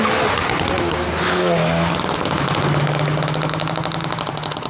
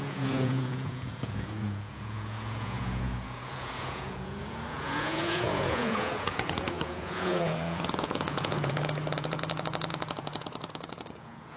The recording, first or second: first